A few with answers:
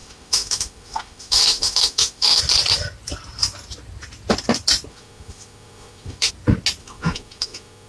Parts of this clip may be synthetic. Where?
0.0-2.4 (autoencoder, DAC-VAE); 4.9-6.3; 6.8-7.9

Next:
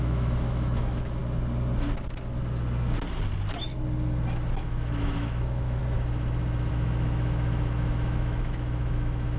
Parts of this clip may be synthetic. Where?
0.0-1.2 (autoencoder, DAC-VAE); 4.6-5.8; 6.7-9.4

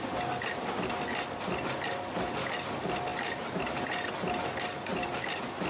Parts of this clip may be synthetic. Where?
none

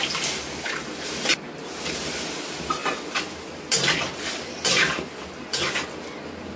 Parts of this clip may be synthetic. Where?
none